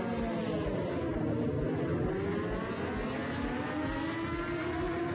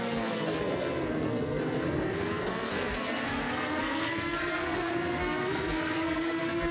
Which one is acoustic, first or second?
first